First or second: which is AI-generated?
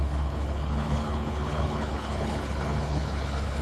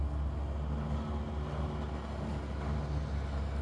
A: first